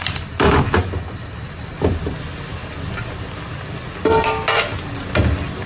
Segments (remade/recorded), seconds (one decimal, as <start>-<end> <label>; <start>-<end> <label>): 0.0-1.7 remade; 1.7-5.7 recorded